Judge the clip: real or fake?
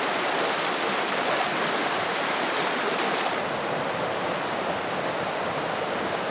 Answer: real